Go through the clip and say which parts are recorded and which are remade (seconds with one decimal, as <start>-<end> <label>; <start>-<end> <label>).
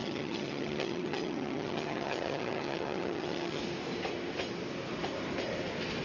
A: 0.0-3.6 remade; 3.6-6.0 recorded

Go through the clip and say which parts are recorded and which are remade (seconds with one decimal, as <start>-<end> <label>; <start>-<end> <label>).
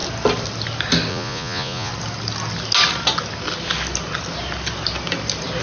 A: 0.0-1.1 recorded; 1.1-1.9 remade; 1.9-5.6 recorded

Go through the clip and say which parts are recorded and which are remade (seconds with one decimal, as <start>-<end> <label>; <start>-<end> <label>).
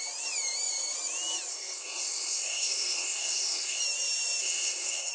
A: 0.0-1.5 recorded; 1.5-3.8 remade; 3.8-4.4 recorded; 4.4-5.1 remade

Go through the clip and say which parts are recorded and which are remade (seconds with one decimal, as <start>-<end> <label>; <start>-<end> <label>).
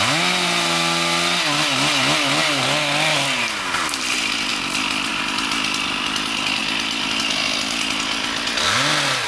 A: 0.0-9.3 recorded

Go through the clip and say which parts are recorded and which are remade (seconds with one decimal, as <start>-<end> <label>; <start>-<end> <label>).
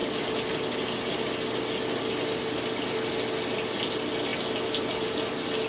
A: 0.0-3.1 remade; 3.1-5.7 recorded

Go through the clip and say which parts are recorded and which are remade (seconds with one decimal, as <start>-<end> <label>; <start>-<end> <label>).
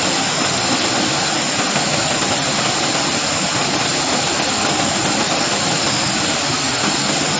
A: 0.0-7.4 recorded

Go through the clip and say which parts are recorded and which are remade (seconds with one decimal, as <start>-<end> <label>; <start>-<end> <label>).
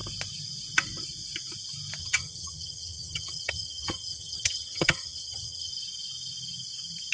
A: 0.0-2.0 recorded; 2.0-5.7 remade; 5.7-7.1 recorded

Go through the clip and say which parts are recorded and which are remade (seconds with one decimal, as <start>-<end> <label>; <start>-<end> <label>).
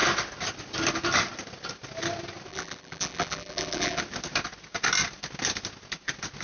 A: 0.0-2.5 recorded; 2.5-4.0 remade; 4.0-6.4 recorded